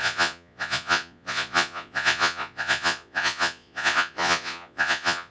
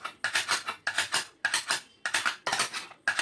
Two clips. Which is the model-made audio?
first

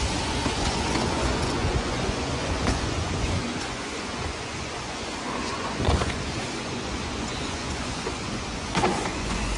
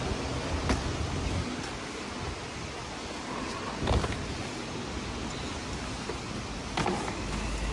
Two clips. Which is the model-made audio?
first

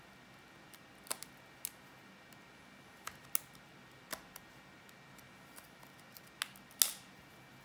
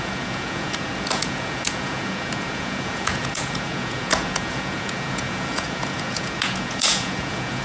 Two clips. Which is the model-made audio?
second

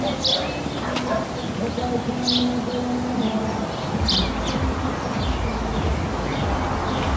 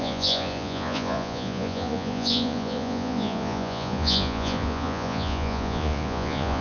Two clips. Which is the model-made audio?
second